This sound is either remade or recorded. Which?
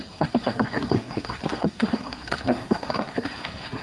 remade